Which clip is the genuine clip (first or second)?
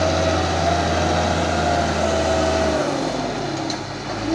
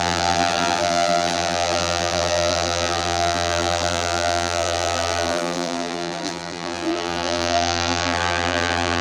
first